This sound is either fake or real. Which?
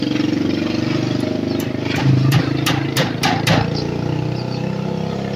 real